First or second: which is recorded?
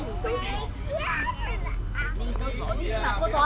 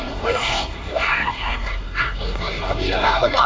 first